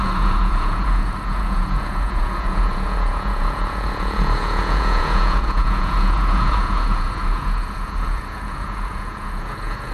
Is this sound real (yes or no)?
no